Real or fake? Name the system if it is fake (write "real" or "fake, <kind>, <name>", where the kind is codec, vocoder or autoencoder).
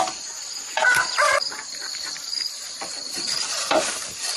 fake, vocoder, BigVGAN v2